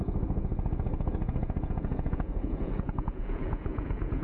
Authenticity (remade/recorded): remade